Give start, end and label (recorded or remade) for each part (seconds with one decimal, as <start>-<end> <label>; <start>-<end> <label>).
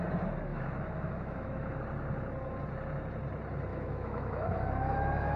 0.0-0.5 recorded; 0.5-1.8 remade; 1.8-3.7 recorded; 3.7-5.4 remade